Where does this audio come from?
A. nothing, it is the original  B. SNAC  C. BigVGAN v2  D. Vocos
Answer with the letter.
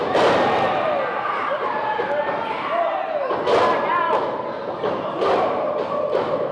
A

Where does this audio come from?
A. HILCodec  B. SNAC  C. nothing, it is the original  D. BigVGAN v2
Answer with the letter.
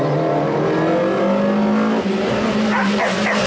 C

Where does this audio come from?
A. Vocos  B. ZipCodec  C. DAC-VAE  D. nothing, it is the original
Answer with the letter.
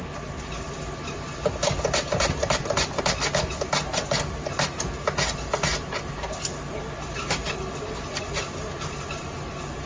D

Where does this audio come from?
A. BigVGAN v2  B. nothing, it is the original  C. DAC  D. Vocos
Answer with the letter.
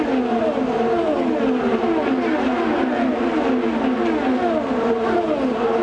B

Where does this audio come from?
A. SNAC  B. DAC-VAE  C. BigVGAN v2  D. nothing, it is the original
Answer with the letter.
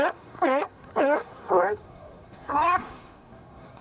A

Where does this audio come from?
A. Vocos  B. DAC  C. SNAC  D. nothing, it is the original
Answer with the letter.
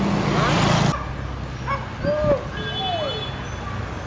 D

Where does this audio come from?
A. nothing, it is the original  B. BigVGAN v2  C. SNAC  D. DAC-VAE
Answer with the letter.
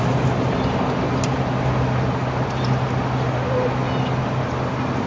A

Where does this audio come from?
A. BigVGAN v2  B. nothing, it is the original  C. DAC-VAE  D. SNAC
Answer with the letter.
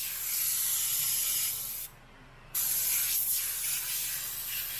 B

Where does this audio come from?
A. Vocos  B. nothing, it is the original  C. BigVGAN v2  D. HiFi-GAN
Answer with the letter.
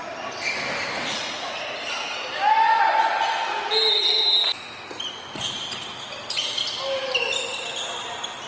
B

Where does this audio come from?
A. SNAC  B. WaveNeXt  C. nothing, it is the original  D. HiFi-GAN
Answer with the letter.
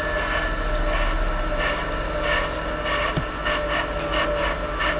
C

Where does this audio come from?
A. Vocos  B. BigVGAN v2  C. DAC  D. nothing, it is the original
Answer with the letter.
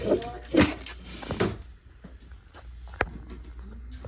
D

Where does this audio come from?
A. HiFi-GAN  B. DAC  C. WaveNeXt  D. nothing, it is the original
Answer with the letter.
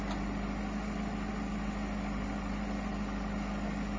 D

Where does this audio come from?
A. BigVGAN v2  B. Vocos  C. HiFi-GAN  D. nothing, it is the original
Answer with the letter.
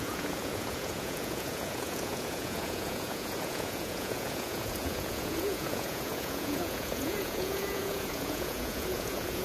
B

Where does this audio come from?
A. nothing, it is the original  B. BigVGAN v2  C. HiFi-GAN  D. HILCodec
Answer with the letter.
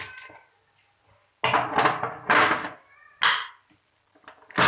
A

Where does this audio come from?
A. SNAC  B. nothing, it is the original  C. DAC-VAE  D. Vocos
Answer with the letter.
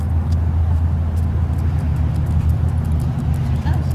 B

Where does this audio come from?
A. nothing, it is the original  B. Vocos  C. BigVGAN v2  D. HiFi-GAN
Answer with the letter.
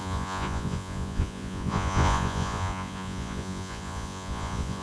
B